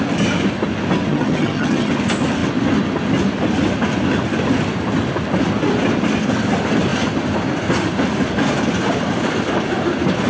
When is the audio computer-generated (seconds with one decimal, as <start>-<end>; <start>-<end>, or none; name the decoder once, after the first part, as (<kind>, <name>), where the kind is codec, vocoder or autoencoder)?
1.1-1.9 (vocoder, HiFi-GAN)